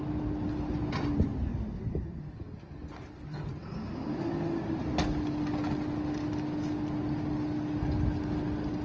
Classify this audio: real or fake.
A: real